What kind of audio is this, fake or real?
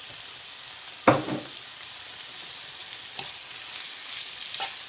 real